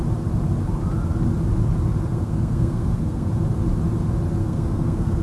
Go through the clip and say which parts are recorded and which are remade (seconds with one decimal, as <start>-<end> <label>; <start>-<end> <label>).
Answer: 0.0-2.1 recorded; 2.1-3.3 remade; 3.3-4.4 recorded; 4.4-5.2 remade